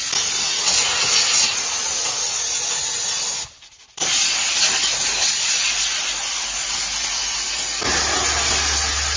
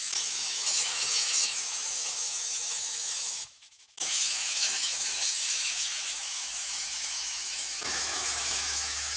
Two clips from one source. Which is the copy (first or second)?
second